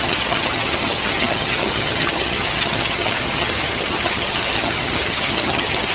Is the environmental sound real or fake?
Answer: fake